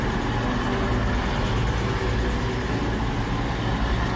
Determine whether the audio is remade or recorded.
recorded